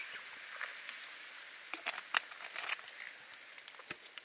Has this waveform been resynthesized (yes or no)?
no